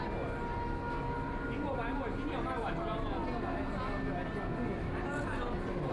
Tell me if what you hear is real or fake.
real